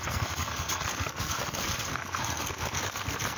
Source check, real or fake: fake